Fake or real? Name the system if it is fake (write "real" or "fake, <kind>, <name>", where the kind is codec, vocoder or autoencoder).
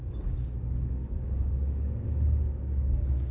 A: fake, codec, DAC